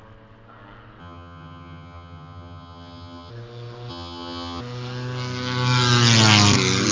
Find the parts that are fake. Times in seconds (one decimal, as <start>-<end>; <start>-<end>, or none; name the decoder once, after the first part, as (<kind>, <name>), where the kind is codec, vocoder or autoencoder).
1.0-3.3 (vocoder, HiFi-GAN); 3.9-4.6